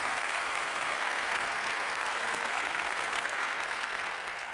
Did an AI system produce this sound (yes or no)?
yes